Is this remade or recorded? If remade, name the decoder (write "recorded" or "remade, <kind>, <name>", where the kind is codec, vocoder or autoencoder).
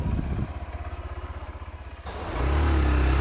recorded